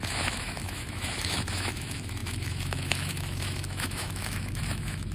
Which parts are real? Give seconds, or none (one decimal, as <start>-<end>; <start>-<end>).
none